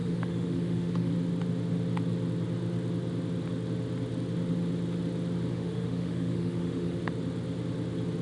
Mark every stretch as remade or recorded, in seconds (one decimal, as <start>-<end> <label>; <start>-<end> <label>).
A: 0.0-1.1 remade; 1.1-5.5 recorded; 5.5-7.0 remade; 7.0-8.2 recorded